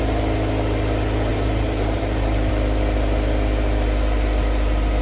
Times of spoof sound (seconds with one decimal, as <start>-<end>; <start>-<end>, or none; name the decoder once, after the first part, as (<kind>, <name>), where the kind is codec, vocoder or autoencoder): 1.3-2.5 (vocoder, BigVGAN v2)